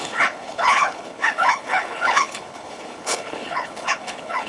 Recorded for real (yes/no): no